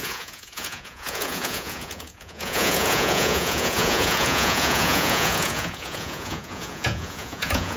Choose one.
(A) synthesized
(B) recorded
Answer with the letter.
A